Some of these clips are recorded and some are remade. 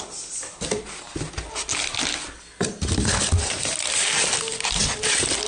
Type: recorded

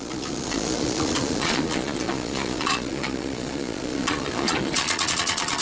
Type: remade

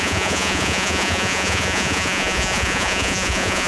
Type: remade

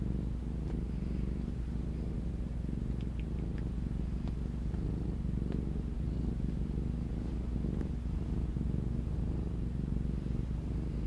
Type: recorded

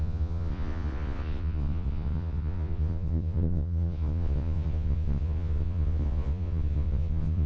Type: remade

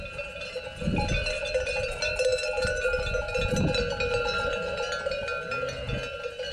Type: recorded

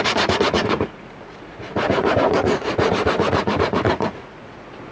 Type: remade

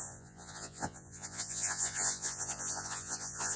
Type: remade